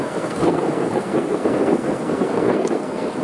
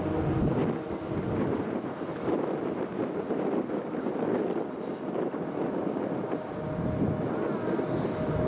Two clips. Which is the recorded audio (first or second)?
second